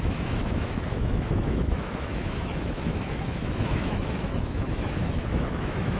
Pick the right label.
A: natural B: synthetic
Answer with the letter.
B